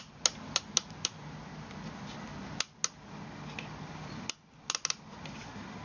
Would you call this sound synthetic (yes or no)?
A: no